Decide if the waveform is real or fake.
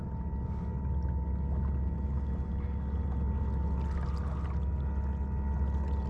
real